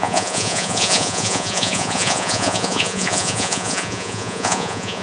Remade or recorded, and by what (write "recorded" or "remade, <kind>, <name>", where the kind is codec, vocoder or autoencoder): remade, vocoder, Vocos